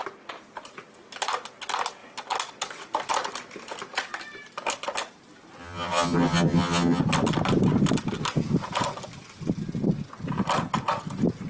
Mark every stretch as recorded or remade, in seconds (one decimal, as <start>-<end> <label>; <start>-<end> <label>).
0.0-5.6 recorded; 5.6-7.0 remade; 7.0-11.5 recorded